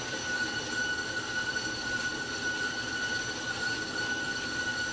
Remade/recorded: remade